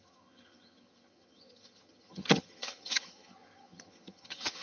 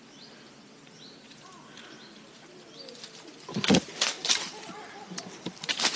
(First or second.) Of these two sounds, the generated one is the first